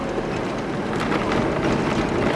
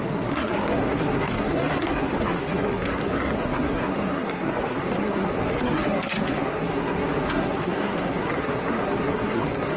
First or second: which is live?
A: first